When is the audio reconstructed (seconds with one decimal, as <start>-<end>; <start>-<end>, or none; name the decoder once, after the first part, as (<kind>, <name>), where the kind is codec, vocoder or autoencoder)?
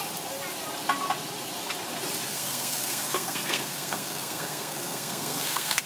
2.3-5.9 (codec, SNAC)